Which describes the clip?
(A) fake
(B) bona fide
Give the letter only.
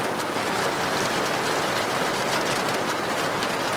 B